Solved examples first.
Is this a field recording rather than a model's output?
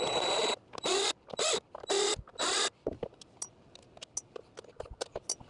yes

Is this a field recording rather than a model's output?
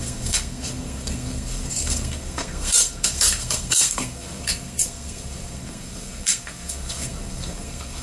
no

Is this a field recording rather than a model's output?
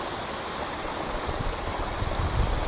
yes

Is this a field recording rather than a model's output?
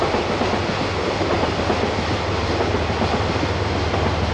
yes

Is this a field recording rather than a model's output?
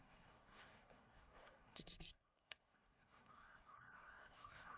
no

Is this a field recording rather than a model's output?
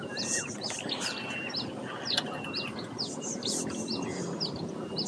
yes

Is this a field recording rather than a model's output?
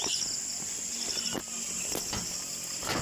yes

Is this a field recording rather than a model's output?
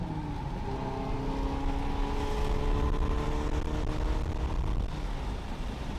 yes